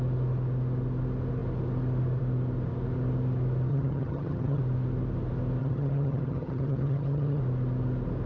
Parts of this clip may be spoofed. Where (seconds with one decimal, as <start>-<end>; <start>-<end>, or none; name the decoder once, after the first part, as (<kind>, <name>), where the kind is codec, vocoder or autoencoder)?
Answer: 3.7-4.6 (vocoder, HiFi-GAN); 5.6-7.4